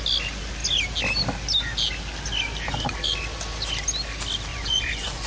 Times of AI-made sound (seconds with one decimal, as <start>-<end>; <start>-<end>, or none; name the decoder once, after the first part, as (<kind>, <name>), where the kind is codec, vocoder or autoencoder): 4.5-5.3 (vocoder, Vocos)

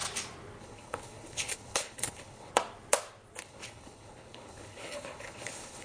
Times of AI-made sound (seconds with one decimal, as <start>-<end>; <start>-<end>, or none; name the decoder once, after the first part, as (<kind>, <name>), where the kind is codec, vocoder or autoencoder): 0.6-2.5 (codec, HILCodec); 3.4-5.8

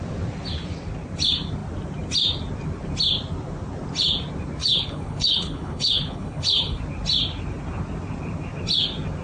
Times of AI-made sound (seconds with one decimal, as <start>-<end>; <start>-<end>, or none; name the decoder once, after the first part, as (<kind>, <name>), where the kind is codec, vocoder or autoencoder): 4.6-6.8 (codec, HILCodec)

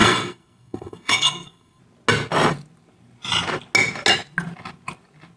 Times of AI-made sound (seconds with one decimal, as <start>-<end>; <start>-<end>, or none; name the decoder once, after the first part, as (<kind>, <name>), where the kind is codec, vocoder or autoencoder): 0.0-1.8 (codec, SNAC)